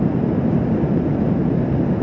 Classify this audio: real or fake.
real